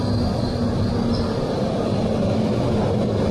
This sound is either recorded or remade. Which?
recorded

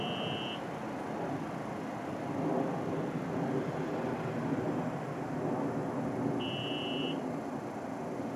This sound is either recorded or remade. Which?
recorded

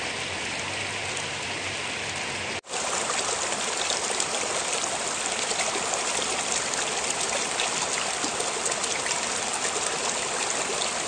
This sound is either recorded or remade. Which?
recorded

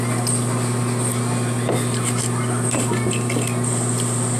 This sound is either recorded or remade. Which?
recorded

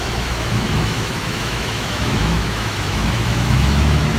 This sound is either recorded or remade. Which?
remade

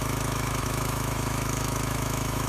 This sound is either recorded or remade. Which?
remade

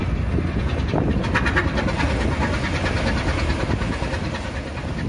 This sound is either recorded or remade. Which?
recorded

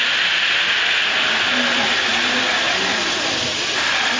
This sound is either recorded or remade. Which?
recorded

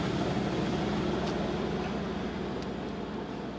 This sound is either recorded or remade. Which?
recorded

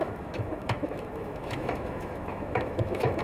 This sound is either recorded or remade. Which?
remade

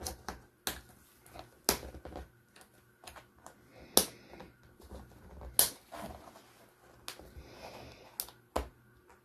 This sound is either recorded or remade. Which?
recorded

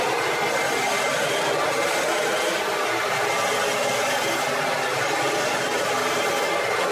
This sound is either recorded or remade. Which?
recorded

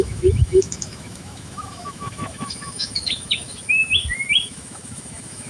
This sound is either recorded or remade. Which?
remade